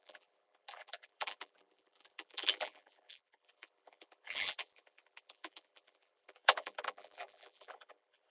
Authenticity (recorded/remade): remade